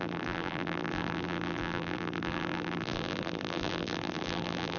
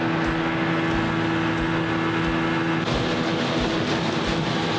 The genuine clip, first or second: second